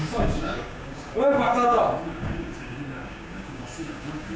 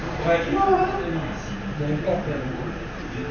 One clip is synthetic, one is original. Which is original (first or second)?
second